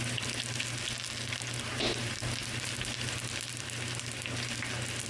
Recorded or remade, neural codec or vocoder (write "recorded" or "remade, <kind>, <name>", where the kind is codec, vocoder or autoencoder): recorded